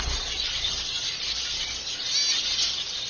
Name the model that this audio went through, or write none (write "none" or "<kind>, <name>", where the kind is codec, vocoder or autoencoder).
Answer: none